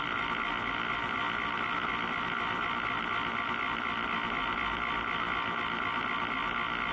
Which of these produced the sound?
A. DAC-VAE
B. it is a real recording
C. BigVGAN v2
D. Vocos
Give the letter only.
B